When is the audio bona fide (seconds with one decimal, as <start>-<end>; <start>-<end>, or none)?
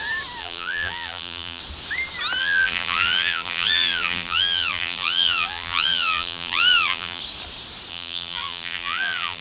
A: 0.0-0.4; 1.6-2.4; 7.2-7.9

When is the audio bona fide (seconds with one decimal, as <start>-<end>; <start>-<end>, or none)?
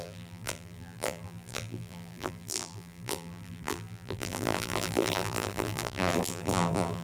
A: none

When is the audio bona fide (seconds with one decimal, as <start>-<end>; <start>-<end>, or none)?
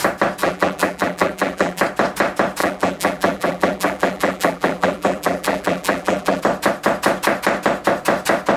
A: 0.0-0.4; 1.8-2.6; 6.4-8.6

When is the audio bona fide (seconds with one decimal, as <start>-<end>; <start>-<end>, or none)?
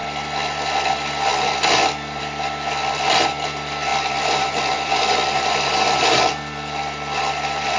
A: 0.0-3.9; 6.0-7.8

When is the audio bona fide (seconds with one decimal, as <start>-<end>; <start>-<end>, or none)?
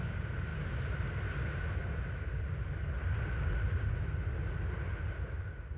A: 0.0-5.8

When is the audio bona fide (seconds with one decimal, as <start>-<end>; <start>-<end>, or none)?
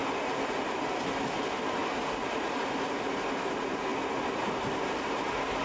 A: 0.0-5.6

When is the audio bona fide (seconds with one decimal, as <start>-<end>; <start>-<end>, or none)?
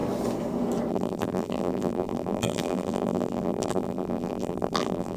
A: 0.0-0.9